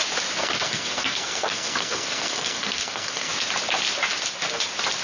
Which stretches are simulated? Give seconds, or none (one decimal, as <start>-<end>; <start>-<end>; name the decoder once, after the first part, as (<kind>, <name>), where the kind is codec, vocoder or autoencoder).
0.4-3.3 (codec, SNAC)